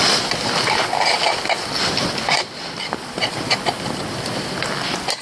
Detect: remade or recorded recorded